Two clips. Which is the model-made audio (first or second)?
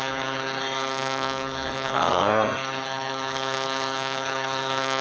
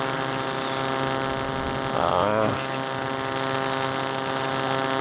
first